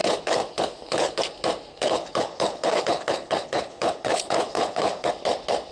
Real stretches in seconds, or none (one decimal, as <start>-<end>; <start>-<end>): 1.2-1.7; 5.1-5.7